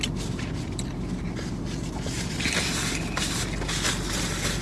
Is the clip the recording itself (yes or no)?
yes